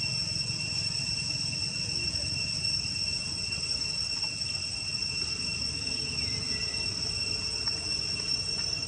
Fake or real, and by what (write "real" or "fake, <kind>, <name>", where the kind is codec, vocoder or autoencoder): real